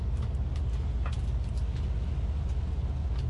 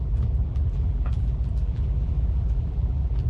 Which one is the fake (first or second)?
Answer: second